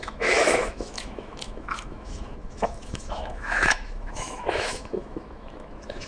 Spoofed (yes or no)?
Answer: yes